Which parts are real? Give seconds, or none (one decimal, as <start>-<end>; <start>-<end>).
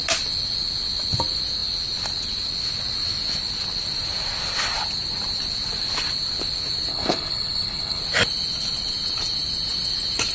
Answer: 0.0-6.9; 8.0-10.3